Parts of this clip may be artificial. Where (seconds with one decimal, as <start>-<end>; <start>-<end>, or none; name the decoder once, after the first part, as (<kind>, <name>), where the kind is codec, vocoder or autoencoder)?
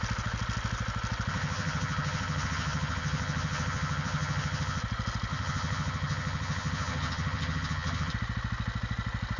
1.3-4.8 (vocoder, HiFi-GAN); 5.3-8.1